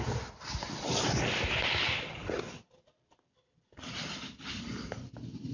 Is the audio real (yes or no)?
yes